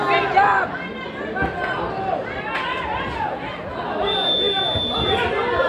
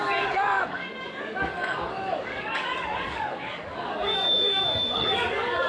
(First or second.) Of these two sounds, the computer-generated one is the second